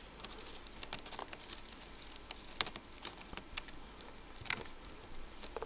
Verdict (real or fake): real